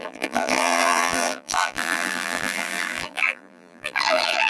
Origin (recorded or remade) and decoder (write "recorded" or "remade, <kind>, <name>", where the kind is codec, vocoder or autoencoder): remade, vocoder, BigVGAN v2